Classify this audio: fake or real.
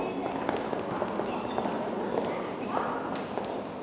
real